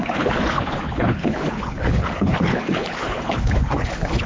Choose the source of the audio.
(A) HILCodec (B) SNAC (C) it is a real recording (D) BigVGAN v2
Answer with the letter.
A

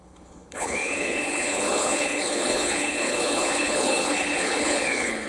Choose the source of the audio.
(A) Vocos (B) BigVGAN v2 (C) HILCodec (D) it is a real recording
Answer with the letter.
C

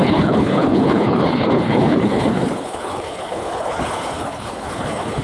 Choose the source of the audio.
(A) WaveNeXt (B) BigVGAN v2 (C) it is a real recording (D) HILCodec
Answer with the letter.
D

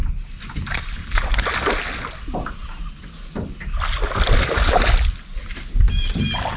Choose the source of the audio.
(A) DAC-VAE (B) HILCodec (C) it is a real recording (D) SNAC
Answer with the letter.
C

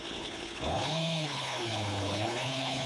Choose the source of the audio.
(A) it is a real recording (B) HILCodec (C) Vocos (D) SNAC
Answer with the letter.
B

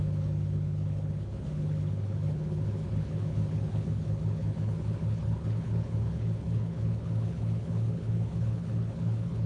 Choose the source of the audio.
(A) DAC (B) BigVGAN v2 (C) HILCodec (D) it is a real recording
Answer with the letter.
C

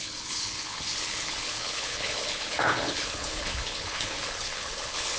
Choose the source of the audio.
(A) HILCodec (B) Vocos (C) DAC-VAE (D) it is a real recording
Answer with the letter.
A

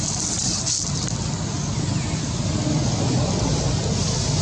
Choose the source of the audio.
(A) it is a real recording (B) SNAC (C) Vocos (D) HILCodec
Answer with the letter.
A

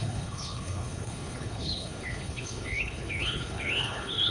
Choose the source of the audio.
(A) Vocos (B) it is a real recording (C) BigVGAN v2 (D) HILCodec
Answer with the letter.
D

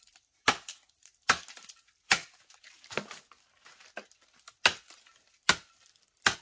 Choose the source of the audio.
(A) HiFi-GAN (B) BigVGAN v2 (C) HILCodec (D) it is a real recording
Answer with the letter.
D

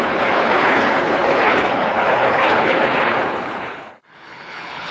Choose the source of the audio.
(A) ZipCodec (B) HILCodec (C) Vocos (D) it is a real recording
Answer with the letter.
B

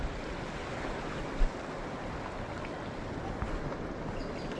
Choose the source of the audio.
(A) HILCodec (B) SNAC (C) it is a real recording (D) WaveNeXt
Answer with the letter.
C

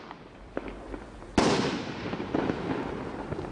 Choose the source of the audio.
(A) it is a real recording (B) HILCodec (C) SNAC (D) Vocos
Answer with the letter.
A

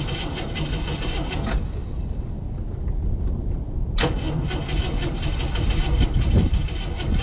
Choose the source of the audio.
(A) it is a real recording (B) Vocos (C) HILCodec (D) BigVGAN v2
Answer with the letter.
A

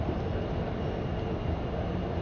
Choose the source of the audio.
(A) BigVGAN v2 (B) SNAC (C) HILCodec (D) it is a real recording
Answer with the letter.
D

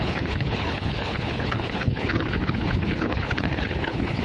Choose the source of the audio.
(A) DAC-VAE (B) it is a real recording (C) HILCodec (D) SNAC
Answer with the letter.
C